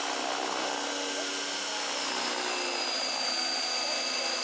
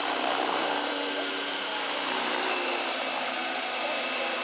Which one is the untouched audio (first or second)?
first